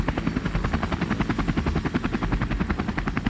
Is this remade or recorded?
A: recorded